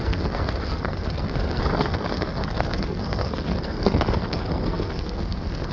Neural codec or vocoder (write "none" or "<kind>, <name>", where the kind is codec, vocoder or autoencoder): codec, SNAC